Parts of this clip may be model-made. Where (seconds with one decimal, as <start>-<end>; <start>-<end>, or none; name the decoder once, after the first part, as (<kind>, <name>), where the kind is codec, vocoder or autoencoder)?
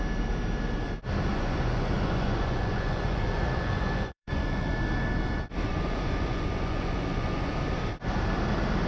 1.3-4.7 (vocoder, Vocos); 5.7-7.5